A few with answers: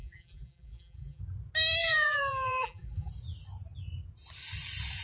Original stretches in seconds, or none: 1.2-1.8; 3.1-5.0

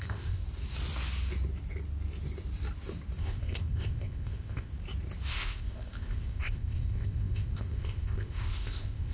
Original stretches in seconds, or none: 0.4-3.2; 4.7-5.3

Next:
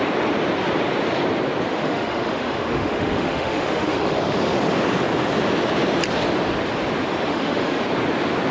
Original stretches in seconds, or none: 0.0-1.7; 4.2-7.3; 7.8-8.5

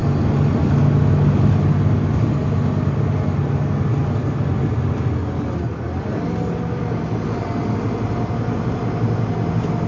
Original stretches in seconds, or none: 0.0-9.9

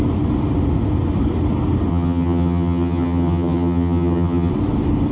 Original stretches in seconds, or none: 0.0-1.9; 4.5-5.1